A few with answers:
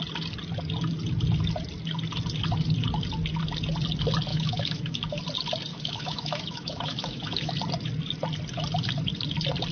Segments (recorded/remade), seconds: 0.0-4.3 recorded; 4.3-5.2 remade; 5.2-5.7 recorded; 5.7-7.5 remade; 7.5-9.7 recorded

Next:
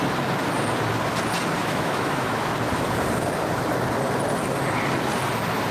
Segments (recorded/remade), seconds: 0.0-1.6 recorded; 1.6-2.5 remade; 2.5-5.7 recorded

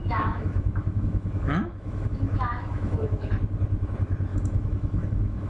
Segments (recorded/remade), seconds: 0.0-3.3 remade; 3.3-4.3 recorded; 4.3-5.5 remade

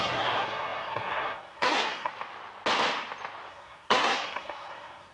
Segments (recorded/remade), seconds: 0.0-2.1 remade; 2.1-3.5 recorded; 3.5-5.1 remade

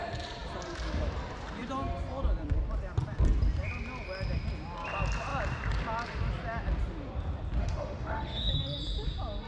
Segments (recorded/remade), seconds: 0.0-7.6 recorded; 7.6-8.5 remade; 8.5-9.5 recorded

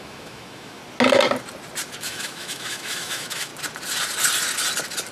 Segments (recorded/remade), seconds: 0.0-0.8 remade; 0.8-2.0 recorded; 2.0-3.5 remade; 3.5-5.1 recorded

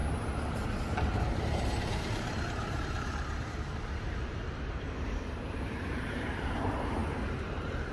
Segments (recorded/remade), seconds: 0.0-0.5 recorded; 0.5-7.0 remade; 7.0-7.5 recorded; 7.5-7.9 remade